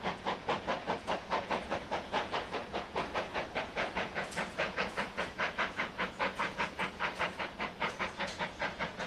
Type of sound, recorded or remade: remade